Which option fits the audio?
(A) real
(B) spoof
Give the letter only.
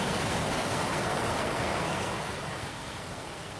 B